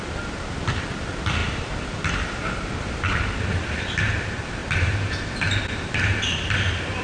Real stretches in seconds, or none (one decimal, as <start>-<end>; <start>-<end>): 0.0-1.4; 4.0-4.6; 5.1-7.0